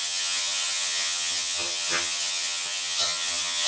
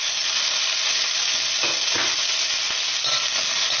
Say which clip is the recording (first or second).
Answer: second